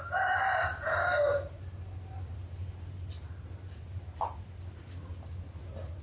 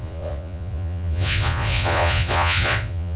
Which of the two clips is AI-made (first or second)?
second